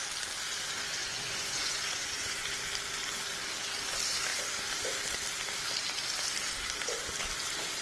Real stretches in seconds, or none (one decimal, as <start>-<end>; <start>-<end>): 0.0-1.0; 2.7-7.8